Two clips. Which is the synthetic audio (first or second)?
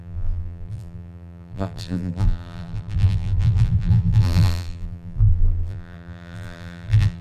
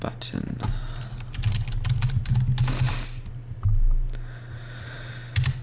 first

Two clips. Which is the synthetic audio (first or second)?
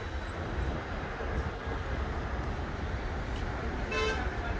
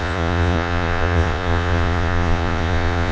second